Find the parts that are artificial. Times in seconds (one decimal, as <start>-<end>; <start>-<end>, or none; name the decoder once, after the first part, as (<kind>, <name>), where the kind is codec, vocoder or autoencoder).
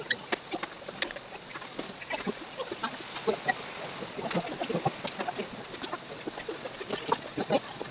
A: none